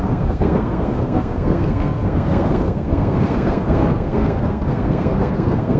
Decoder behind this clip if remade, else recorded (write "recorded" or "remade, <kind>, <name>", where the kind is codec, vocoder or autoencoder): remade, codec, SNAC